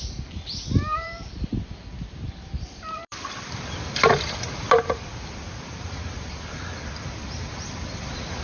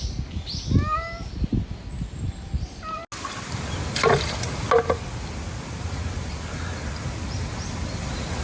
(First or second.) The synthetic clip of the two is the first